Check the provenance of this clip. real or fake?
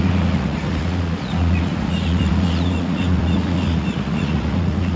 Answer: fake